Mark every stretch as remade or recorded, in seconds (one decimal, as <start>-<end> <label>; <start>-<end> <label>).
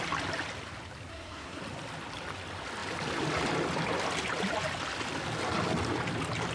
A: 0.0-1.1 recorded; 1.1-1.6 remade; 1.6-6.5 recorded